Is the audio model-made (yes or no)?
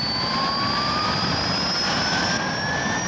no